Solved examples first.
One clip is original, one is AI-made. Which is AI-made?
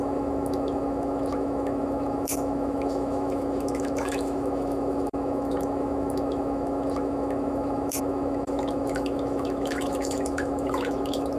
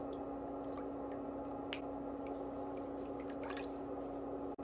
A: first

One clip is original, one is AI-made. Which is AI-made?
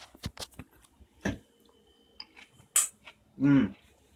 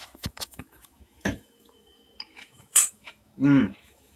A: second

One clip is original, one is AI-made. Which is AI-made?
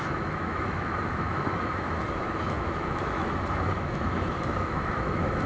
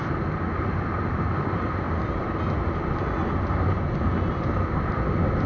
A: first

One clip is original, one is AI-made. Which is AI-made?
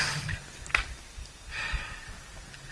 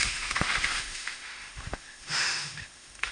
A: second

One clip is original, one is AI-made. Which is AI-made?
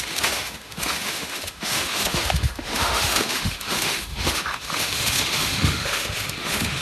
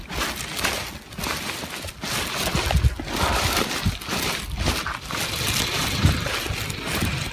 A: first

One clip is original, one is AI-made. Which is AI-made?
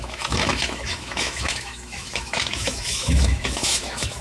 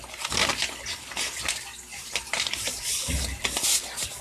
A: first